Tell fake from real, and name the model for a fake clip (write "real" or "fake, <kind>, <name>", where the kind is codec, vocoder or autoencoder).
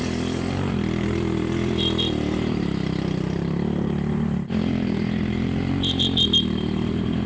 fake, vocoder, BigVGAN v2